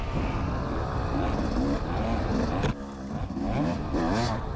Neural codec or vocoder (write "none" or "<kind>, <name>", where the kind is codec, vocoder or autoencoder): none